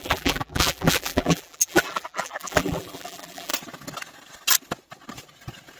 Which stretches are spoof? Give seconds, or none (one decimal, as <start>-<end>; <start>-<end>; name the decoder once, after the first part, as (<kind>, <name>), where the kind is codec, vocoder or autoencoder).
0.0-3.5 (vocoder, BigVGAN v2)